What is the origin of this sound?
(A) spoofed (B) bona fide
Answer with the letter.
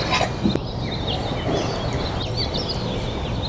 B